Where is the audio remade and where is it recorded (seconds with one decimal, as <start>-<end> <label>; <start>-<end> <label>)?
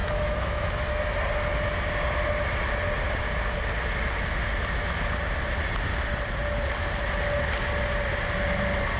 0.0-1.0 remade; 1.0-9.0 recorded